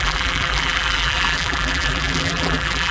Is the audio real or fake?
fake